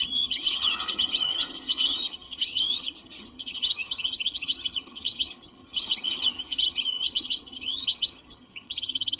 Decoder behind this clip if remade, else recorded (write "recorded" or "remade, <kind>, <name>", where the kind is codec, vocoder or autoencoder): remade, vocoder, HiFi-GAN